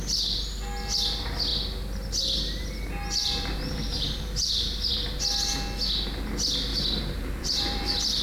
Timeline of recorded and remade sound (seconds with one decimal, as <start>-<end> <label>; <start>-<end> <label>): 0.0-3.2 recorded; 3.2-4.9 remade; 4.9-6.7 recorded; 6.7-8.2 remade